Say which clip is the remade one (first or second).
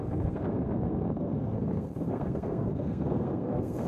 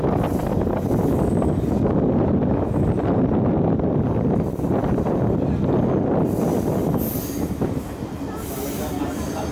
first